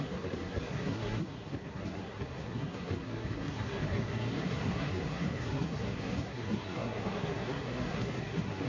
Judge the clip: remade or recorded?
remade